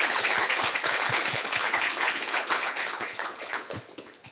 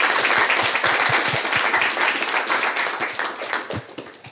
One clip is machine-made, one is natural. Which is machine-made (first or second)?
first